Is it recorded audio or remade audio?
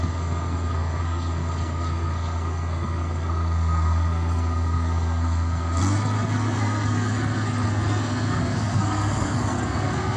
remade